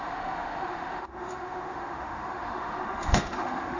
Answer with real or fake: fake